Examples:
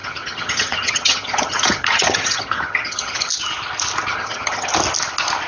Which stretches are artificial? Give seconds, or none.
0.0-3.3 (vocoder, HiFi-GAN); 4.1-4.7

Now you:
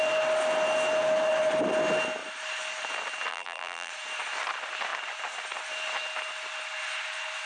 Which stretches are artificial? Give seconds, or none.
3.3-3.9 (vocoder, BigVGAN v2)

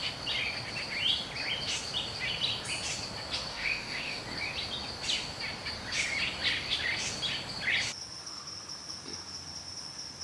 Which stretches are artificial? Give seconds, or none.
3.5-4.2 (autoencoder, DAC-VAE)

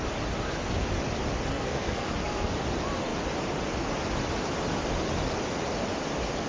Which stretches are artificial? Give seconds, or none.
1.5-2.5 (codec, SNAC)

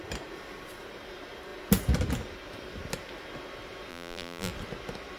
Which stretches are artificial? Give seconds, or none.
3.9-4.5 (vocoder, BigVGAN v2)

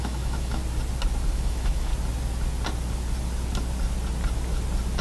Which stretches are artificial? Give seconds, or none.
0.0-0.6 (autoencoder, DAC-VAE); 1.3-1.9